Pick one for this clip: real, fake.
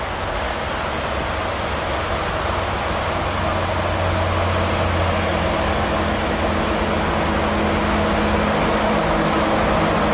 real